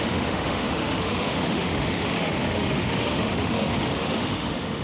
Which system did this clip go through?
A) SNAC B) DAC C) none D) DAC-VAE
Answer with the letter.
D